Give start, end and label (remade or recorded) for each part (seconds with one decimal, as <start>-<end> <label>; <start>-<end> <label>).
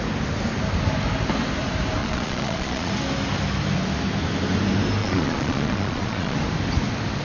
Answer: 0.0-2.0 recorded; 2.0-2.9 remade; 2.9-5.0 recorded; 5.0-6.4 remade; 6.4-7.2 recorded